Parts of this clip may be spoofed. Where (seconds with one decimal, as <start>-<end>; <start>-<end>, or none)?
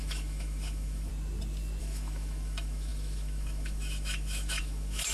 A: 0.0-1.1; 1.8-5.1